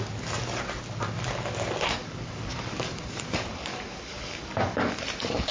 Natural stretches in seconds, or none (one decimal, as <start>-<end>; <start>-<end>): 0.0-2.0